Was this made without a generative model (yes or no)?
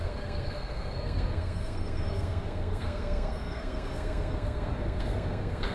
no